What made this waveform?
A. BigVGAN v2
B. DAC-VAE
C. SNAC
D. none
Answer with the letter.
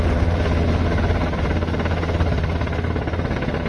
D